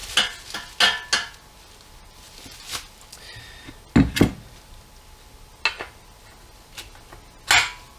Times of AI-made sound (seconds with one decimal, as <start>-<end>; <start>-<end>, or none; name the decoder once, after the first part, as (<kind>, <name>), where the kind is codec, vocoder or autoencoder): none